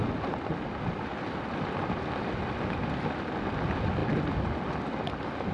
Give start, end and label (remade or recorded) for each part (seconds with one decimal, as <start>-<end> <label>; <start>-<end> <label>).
0.0-5.5 recorded